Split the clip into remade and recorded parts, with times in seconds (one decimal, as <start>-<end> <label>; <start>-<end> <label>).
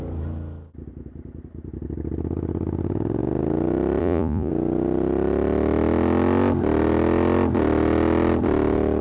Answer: 0.0-4.0 recorded; 4.0-4.5 remade; 4.5-9.0 recorded